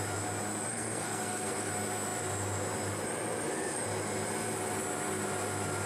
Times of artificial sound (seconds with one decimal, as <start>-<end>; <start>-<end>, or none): 0.7-1.7